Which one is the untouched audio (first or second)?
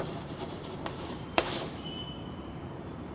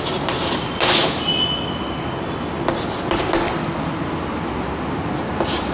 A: second